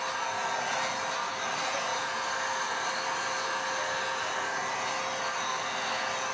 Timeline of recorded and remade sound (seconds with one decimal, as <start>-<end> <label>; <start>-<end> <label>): 0.0-6.3 recorded